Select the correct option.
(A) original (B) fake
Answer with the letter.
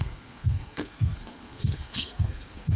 B